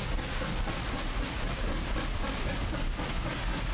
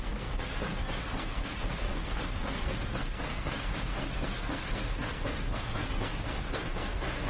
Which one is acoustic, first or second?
first